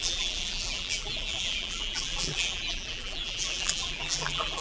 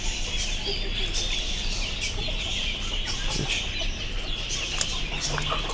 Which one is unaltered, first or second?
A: second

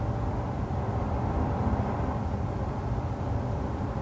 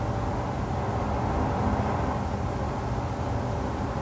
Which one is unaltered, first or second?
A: second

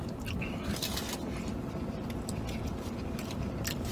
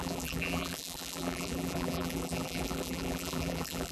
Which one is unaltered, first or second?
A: first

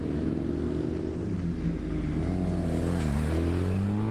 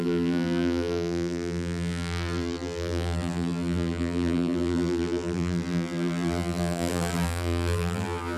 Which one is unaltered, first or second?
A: first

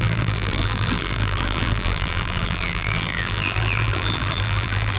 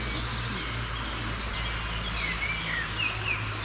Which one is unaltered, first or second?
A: second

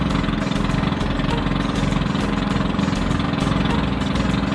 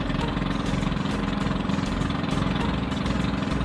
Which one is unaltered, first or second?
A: first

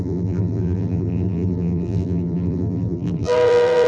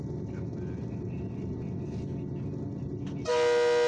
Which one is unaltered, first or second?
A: second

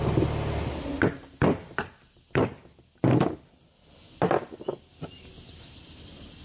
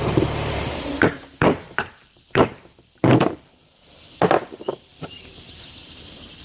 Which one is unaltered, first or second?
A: first